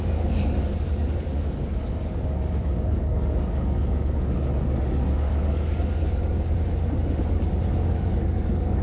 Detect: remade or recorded remade